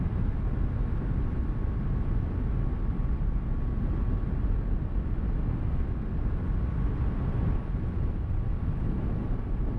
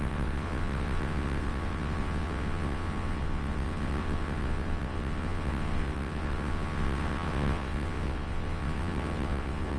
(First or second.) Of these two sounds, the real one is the first